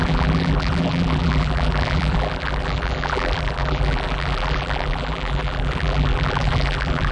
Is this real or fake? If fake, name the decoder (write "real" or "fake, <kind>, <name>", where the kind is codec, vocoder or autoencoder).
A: fake, vocoder, BigVGAN v2